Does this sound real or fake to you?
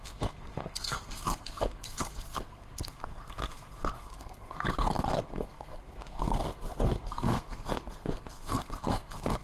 fake